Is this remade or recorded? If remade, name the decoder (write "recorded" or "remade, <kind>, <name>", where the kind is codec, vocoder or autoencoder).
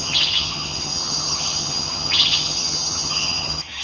remade, vocoder, HiFi-GAN